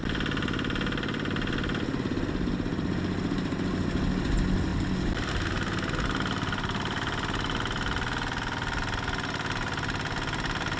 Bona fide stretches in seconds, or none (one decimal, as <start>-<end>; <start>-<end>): 0.0-10.8